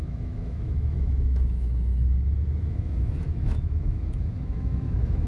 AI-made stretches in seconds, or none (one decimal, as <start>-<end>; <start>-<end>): 0.0-1.9; 2.7-5.3